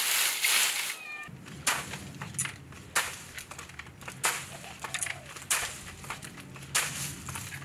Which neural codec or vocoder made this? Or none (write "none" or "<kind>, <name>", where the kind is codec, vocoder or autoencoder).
none